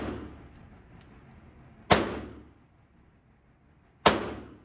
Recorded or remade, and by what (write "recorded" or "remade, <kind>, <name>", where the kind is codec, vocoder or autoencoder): recorded